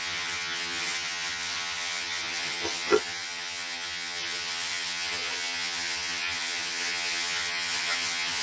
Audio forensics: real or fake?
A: fake